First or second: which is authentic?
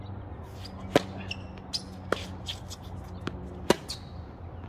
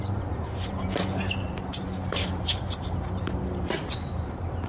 first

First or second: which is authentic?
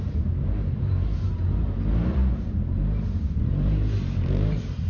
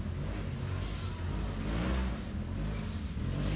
second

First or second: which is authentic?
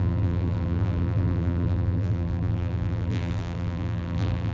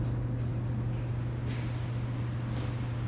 second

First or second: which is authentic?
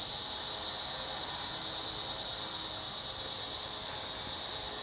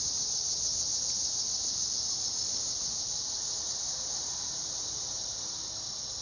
first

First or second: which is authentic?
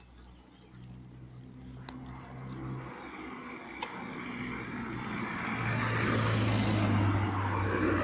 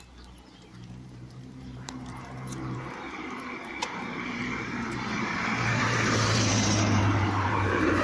first